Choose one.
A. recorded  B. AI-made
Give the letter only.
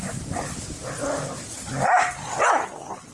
A